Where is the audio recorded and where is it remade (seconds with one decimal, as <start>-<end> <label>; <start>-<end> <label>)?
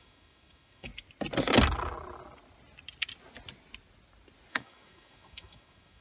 0.0-0.9 remade; 0.9-4.5 recorded; 4.5-6.0 remade